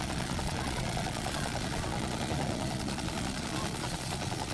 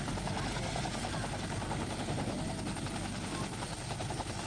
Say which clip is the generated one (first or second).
first